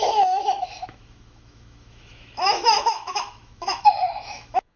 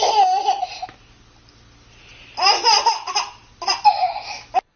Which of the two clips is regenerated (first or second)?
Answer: first